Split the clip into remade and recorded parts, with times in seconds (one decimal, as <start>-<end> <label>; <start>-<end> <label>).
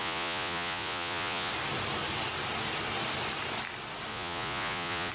0.0-1.5 remade; 1.5-4.1 recorded; 4.1-5.1 remade